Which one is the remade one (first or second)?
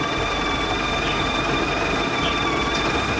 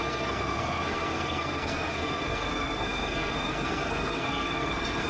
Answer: second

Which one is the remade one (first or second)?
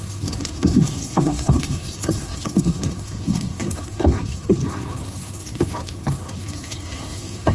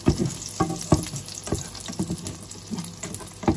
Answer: first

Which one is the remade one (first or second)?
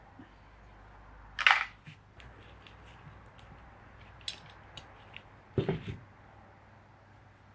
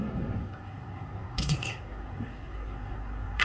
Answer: second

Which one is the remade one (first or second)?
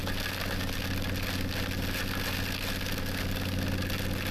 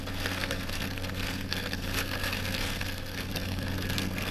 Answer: second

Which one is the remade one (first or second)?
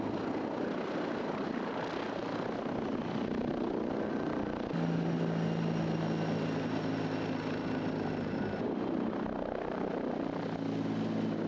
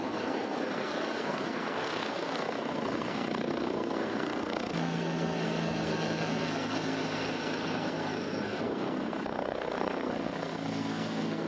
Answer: second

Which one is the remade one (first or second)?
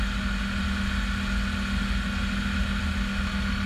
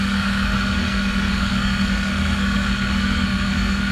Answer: second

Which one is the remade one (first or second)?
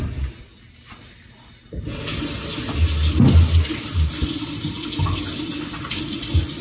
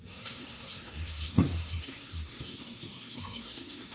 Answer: second